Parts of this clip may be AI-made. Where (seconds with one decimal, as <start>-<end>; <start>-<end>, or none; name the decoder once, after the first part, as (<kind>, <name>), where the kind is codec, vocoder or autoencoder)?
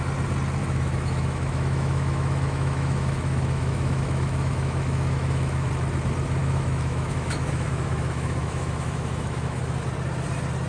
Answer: 0.6-5.7 (autoencoder, DAC-VAE); 6.4-9.6